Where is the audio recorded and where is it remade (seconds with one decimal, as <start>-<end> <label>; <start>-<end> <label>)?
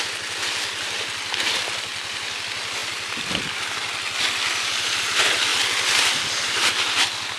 0.0-5.5 recorded; 5.5-6.7 remade; 6.7-7.4 recorded